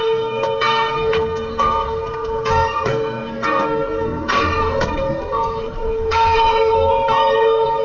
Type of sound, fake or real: fake